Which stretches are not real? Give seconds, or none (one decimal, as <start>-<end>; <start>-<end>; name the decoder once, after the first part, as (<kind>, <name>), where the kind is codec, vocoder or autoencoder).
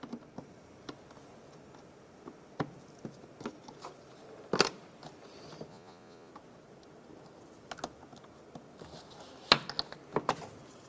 5.7-6.3 (vocoder, Vocos)